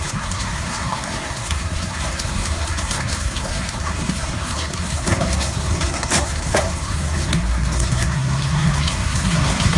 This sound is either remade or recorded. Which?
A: remade